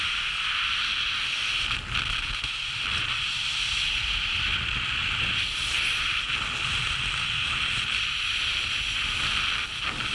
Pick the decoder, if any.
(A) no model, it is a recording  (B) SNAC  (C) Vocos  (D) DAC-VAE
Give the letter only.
A